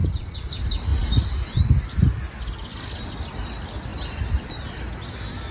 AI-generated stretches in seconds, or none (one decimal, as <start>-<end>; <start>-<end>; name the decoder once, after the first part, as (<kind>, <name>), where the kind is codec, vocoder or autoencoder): 0.0-0.5 (vocoder, Vocos)